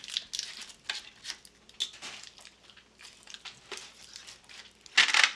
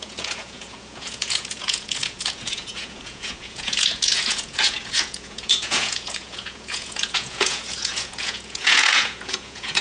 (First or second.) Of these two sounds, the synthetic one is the second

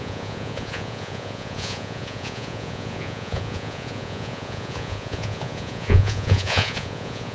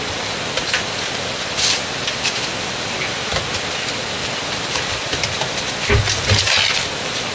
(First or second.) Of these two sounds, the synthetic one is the first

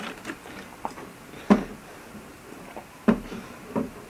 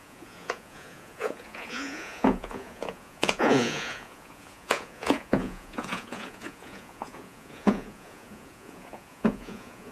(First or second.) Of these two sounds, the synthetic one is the second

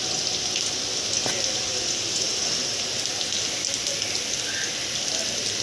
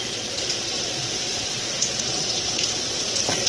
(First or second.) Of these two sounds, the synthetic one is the second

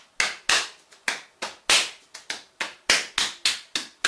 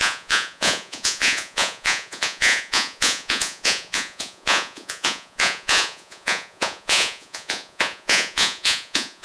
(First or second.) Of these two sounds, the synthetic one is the second